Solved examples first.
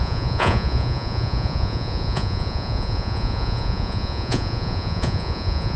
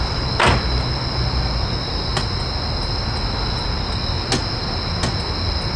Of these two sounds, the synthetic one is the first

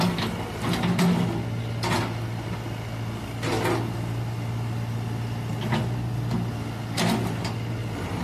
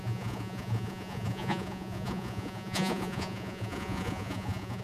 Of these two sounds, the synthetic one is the second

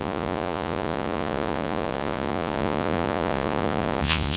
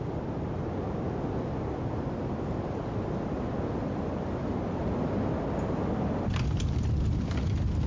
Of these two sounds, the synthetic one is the first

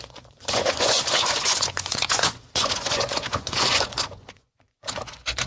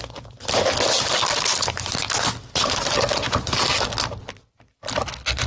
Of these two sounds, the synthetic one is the first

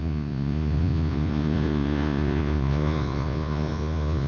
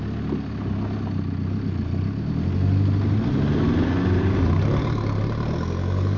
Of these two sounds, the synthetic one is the first